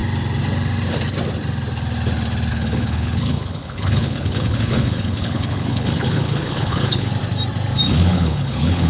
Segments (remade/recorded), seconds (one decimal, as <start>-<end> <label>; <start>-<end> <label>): 0.0-2.5 recorded; 2.5-7.1 remade; 7.1-7.9 recorded; 7.9-8.9 remade